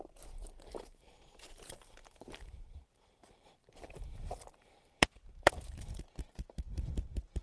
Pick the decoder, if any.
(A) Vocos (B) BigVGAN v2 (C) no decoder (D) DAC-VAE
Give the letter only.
B